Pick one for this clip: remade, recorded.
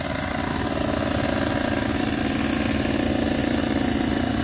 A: recorded